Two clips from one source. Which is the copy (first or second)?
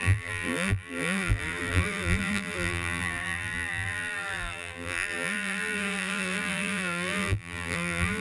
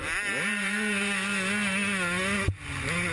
first